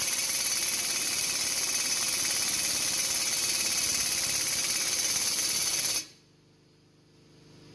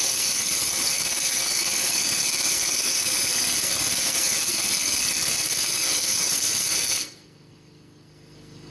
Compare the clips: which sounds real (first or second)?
first